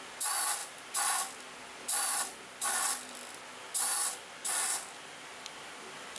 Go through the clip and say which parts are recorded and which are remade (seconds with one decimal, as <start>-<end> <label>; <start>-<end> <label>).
0.0-0.6 recorded; 0.6-1.2 remade; 1.2-2.3 recorded; 2.3-3.3 remade; 3.3-6.2 recorded